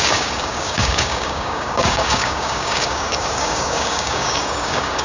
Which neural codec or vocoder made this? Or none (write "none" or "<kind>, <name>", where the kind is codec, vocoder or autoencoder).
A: codec, DAC